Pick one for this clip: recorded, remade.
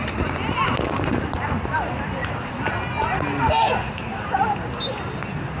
recorded